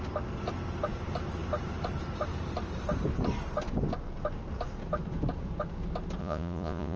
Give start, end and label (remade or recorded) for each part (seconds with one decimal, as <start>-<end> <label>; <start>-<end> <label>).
0.0-6.2 recorded; 6.2-7.0 remade